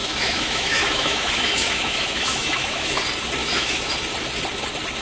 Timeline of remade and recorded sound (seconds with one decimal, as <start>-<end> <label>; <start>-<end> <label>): 0.0-3.0 remade; 3.0-3.4 recorded; 3.4-3.9 remade; 3.9-5.0 recorded